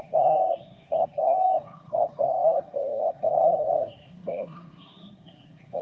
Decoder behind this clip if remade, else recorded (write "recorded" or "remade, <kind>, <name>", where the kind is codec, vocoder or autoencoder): remade, codec, SNAC